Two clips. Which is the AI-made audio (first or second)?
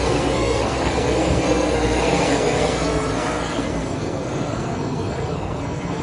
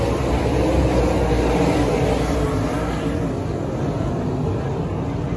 first